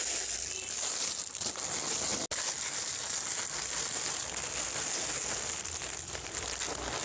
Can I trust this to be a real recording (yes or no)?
yes